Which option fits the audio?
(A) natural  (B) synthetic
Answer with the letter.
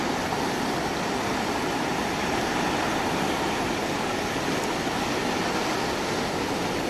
A